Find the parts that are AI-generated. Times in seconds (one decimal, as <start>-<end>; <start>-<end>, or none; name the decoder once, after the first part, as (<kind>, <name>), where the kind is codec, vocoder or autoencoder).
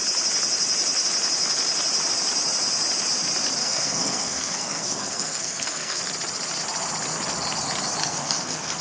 3.6-6.0 (codec, SNAC); 8.0-8.8